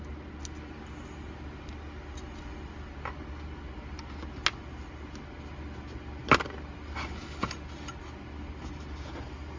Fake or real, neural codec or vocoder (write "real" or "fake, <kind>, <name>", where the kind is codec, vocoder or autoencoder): real